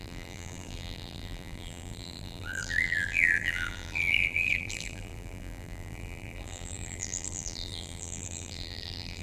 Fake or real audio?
fake